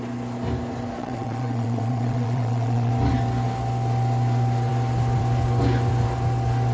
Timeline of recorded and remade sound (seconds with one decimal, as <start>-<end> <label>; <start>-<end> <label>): 0.0-1.0 recorded; 1.0-2.9 remade; 2.9-6.7 recorded